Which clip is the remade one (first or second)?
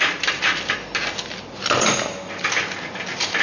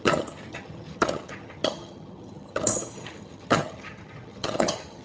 second